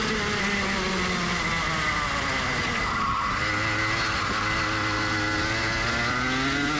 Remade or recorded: recorded